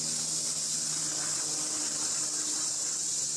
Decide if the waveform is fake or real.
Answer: real